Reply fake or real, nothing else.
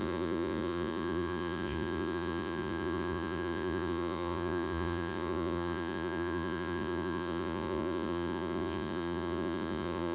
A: fake